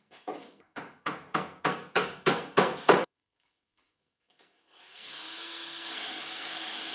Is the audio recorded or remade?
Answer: remade